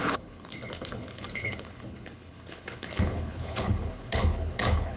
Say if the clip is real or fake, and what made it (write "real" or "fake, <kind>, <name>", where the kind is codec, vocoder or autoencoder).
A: fake, codec, HILCodec